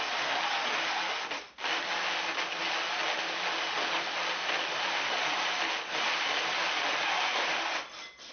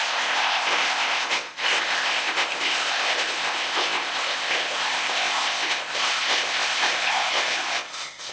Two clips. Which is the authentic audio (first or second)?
first